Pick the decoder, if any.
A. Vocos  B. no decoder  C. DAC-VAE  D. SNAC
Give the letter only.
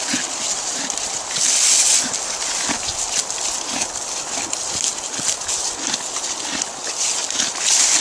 B